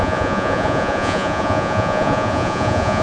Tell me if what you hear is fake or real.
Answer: fake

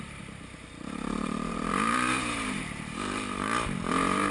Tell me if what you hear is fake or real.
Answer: fake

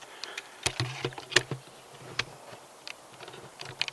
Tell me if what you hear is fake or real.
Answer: real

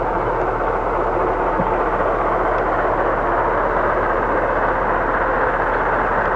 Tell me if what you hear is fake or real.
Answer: real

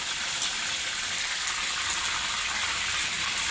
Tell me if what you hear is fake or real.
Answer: fake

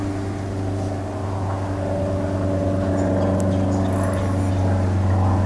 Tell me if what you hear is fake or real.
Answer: real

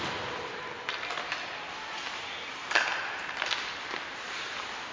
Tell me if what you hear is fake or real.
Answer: real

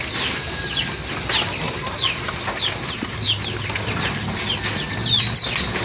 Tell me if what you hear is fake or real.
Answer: real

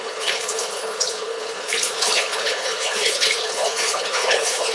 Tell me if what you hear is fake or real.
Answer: fake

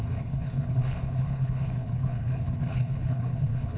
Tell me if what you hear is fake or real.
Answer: fake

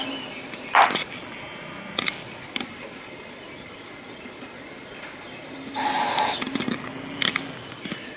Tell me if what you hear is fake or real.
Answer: real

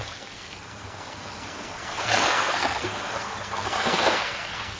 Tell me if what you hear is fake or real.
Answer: fake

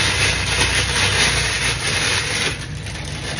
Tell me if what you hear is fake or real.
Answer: real